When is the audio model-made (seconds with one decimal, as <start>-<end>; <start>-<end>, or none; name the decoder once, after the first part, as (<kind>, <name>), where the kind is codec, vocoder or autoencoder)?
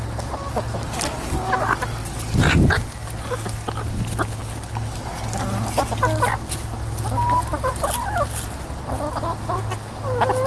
none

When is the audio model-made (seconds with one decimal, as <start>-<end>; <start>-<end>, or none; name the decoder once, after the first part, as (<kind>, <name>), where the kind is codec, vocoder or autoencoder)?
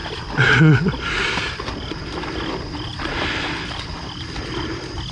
none